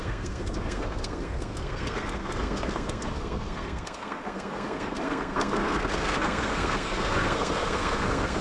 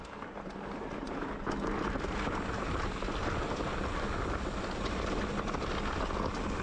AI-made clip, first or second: first